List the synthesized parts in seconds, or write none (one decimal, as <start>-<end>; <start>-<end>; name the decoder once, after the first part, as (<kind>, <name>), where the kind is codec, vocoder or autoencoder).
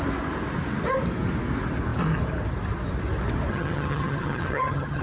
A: 3.5-5.0 (vocoder, HiFi-GAN)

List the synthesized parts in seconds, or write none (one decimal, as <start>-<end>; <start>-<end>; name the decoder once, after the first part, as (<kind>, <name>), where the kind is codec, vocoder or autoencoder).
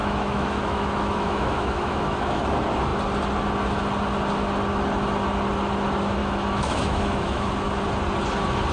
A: 0.0-2.4 (autoencoder, DAC-VAE); 6.2-7.5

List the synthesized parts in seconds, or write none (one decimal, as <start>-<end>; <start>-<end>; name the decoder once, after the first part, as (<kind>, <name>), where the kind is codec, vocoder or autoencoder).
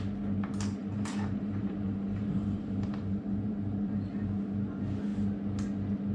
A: 0.8-4.1 (vocoder, BigVGAN v2)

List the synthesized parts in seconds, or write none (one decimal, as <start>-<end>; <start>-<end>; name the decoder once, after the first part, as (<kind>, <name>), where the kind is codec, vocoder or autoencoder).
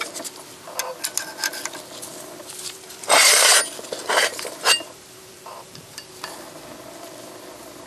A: 2.1-3.6 (vocoder, BigVGAN v2); 4.0-6.1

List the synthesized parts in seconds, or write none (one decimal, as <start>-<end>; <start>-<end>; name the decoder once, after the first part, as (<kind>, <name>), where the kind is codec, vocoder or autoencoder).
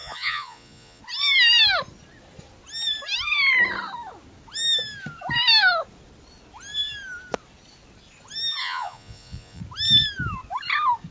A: 0.0-1.0 (vocoder, Vocos); 8.6-9.6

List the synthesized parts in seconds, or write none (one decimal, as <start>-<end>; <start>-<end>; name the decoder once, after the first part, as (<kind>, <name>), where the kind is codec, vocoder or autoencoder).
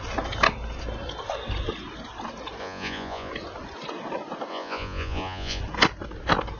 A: 2.6-3.3 (vocoder, Vocos); 4.5-5.6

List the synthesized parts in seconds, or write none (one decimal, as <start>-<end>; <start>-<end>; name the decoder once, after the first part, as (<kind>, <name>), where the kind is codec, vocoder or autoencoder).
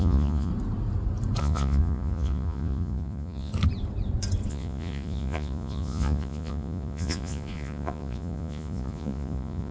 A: 0.0-0.5 (vocoder, Vocos); 1.4-3.5; 4.5-9.7